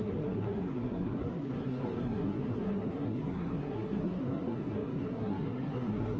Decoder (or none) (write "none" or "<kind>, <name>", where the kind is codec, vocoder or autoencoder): codec, SNAC